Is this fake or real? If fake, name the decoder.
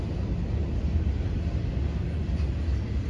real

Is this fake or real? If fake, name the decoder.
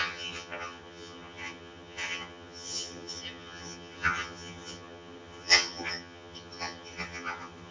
fake, vocoder, HiFi-GAN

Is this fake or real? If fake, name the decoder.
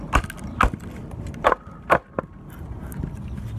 real